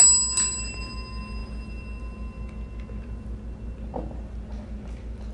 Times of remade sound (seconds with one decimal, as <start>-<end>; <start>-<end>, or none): none